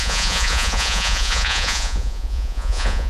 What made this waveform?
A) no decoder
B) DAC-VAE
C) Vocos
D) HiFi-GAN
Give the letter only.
C